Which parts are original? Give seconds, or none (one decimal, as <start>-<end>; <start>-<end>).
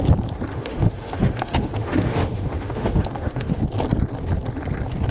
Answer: 0.0-0.5; 3.6-5.1